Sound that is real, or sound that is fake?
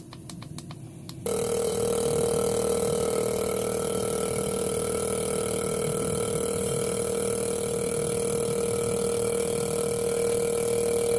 real